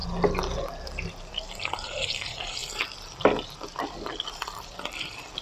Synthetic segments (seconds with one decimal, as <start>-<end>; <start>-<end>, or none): none